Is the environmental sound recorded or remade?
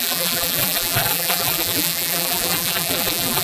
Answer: remade